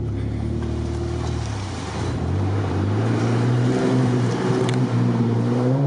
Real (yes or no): no